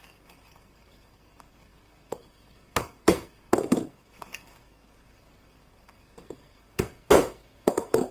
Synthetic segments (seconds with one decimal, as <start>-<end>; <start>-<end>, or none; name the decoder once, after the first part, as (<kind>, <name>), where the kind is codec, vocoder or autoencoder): 0.0-8.1 (codec, SNAC)